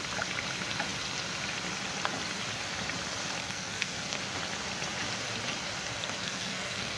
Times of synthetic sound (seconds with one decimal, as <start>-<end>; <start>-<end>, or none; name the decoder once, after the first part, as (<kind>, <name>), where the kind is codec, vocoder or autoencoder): 3.4-4.2 (codec, SNAC); 6.2-7.0